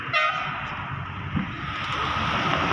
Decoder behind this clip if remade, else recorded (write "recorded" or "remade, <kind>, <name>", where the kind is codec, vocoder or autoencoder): recorded